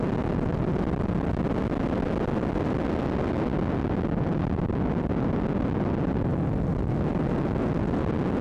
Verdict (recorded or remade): recorded